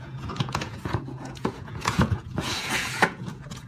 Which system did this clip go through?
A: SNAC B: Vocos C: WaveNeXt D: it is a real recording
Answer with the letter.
B